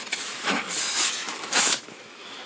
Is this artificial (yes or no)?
yes